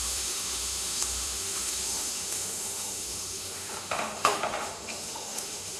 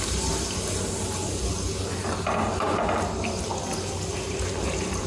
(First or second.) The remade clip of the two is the first